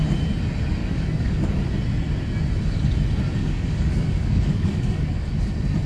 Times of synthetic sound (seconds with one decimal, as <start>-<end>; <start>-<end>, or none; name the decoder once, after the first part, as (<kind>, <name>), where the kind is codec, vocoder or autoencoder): 0.8-1.6 (codec, DAC); 3.4-5.3